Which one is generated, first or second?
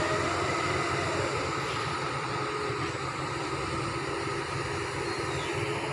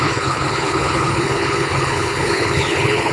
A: second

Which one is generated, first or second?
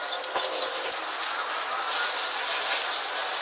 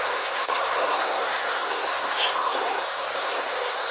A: second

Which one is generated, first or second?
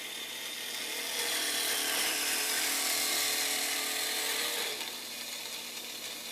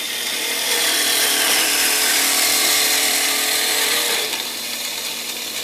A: second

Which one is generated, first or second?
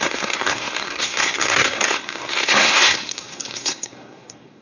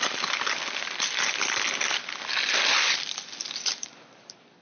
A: first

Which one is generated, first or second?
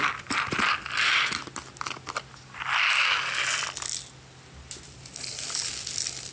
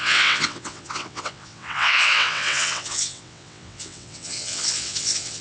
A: second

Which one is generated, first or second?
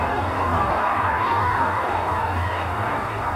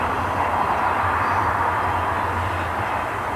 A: first